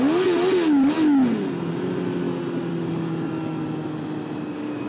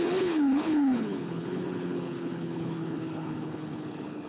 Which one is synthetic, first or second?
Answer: second